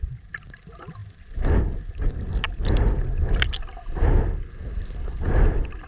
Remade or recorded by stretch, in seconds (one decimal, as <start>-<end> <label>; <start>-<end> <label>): 0.0-5.9 recorded